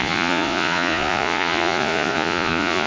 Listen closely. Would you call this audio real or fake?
fake